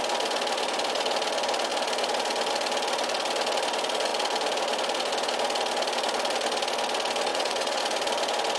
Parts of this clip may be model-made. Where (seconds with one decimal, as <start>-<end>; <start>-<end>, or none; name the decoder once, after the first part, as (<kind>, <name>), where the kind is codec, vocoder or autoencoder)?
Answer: 7.3-7.8 (vocoder, WaveNeXt)